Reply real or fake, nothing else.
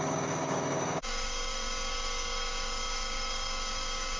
fake